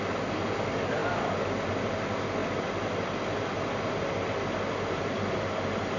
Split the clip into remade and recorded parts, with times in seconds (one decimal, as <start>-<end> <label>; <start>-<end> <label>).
0.0-6.0 recorded